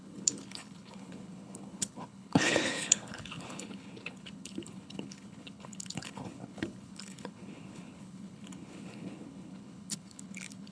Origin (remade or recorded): remade